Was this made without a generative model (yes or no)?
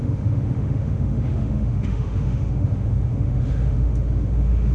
no